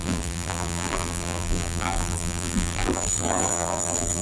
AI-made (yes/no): yes